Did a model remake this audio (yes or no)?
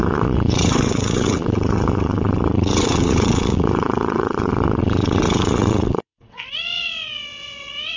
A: yes